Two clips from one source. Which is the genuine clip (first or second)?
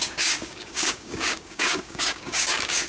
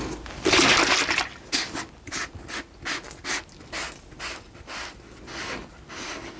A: second